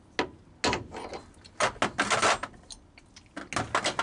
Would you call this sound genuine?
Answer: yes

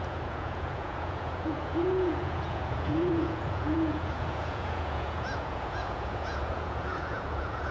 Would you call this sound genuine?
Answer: no